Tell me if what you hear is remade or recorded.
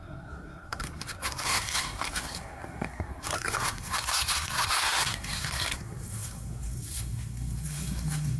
remade